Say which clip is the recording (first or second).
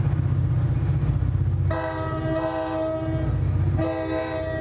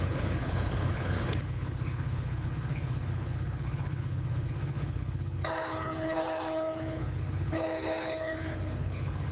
first